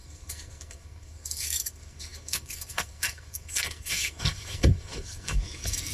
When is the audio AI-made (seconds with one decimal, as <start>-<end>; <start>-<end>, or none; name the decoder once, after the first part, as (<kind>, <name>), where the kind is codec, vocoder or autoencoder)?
0.0-5.9 (codec, SNAC)